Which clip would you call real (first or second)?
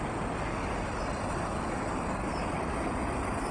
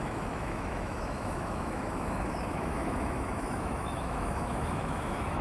first